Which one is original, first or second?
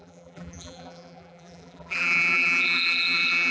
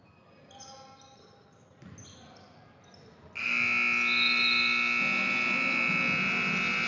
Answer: second